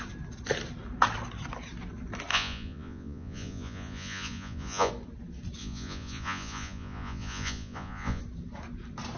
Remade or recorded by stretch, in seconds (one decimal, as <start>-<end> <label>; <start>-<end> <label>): 0.0-2.3 recorded; 2.3-4.9 remade; 4.9-5.6 recorded; 5.6-8.2 remade; 8.2-9.2 recorded